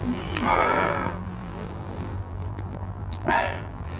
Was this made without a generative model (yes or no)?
no